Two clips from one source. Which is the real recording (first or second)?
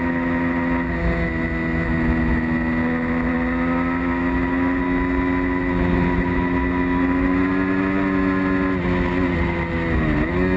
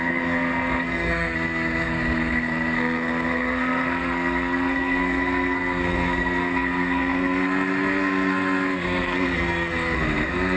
first